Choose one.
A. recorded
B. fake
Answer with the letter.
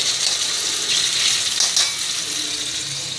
A